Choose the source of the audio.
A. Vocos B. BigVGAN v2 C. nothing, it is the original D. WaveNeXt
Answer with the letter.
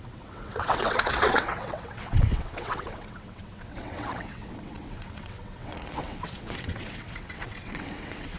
D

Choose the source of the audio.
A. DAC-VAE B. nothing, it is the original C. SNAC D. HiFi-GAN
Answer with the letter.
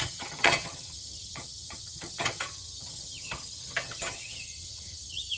D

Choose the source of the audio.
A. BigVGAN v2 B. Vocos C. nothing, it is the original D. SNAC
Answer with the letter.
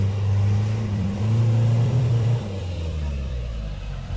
A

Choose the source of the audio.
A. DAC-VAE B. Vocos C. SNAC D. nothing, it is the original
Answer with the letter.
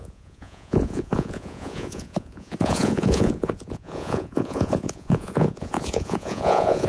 B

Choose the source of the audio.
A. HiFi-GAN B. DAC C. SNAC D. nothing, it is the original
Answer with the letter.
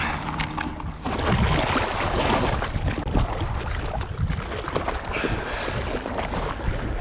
D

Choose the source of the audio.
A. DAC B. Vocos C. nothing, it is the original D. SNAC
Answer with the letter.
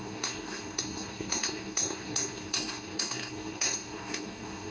D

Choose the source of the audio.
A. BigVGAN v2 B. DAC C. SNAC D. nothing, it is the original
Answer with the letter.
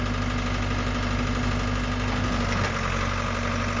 D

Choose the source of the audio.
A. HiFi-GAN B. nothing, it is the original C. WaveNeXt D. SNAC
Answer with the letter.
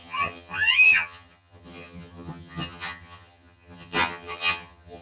A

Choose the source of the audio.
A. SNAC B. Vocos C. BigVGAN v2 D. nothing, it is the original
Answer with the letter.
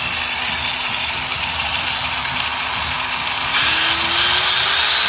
D